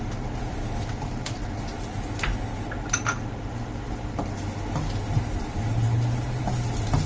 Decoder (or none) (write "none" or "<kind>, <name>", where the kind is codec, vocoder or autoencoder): none